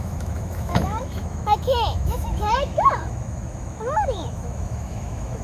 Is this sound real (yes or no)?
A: no